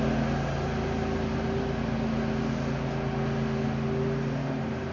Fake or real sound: real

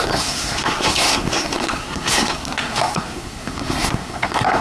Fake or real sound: fake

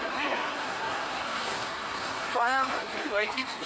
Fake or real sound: fake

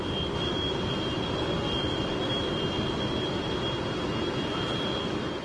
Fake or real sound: real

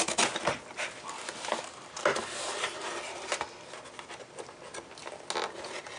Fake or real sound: real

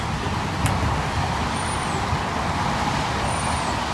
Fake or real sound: real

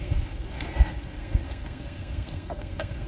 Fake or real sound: fake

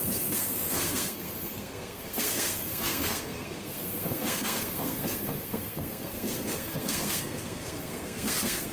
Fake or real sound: fake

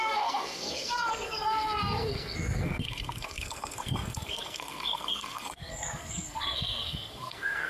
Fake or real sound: fake